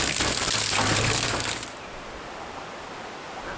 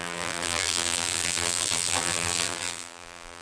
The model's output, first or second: second